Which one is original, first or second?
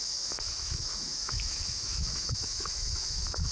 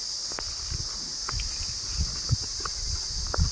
second